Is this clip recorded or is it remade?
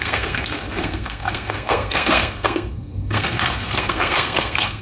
remade